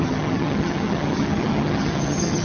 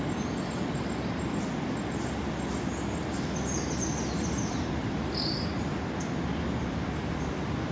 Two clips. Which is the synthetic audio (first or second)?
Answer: first